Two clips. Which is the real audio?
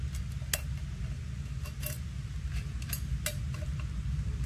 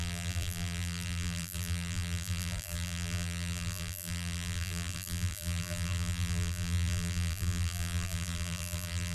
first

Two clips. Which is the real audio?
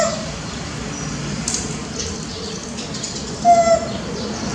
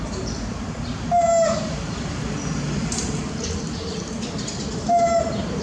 first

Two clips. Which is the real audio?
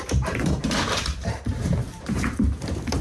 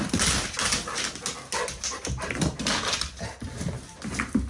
second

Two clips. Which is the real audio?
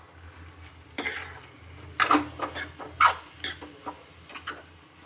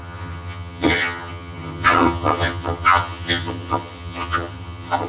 first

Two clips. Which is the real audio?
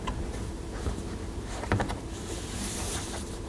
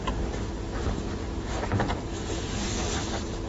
second